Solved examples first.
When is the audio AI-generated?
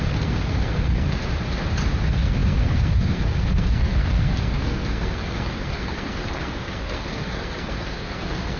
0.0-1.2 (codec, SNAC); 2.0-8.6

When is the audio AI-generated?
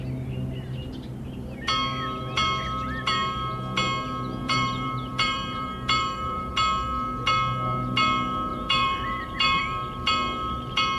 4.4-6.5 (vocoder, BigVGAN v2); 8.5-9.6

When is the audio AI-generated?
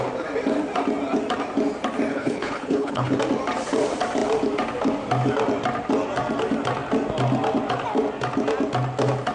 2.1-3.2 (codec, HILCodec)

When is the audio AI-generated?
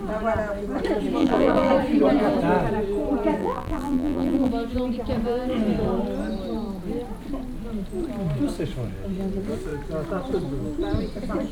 1.2-1.7 (vocoder, BigVGAN v2); 3.4-4.5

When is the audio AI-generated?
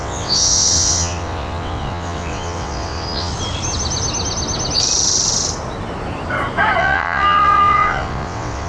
0.0-3.3 (vocoder, WaveNeXt); 6.8-8.7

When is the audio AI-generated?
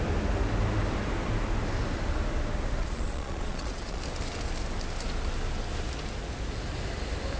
2.8-4.0 (vocoder, Vocos)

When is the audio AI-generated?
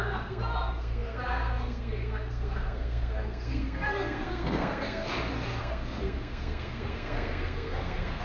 0.0-5.1 (codec, SNAC); 5.6-8.2